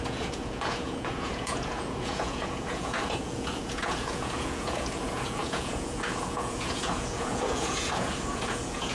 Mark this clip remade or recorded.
remade